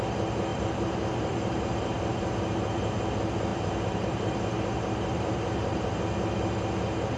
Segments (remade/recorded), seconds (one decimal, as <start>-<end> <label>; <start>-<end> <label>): 0.0-0.5 recorded; 0.5-2.9 remade; 2.9-3.5 recorded; 3.5-6.0 remade; 6.0-7.2 recorded